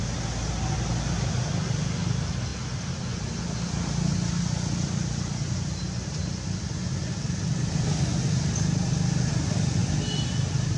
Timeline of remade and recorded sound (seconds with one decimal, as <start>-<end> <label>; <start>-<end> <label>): 0.0-10.8 recorded